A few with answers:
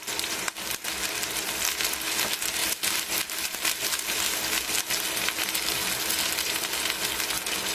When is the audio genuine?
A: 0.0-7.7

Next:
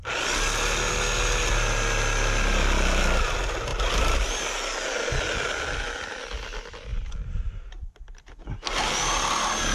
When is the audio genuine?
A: 0.0-6.9; 8.2-9.7